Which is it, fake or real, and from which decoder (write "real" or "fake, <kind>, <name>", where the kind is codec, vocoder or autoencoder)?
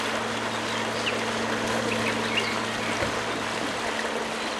real